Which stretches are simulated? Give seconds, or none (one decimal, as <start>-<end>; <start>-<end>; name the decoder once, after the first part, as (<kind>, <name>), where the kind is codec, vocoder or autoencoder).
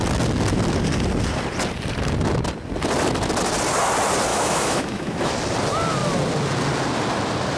4.3-5.3 (autoencoder, DAC-VAE)